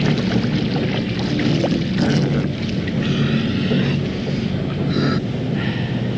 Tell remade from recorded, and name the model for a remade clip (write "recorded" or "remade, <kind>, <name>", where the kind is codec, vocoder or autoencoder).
recorded